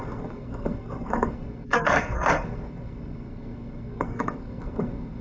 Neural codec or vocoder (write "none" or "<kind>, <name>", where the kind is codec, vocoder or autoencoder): codec, SNAC